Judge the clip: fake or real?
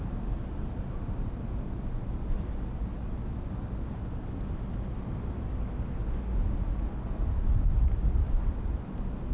real